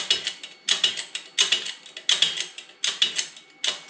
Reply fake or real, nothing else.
real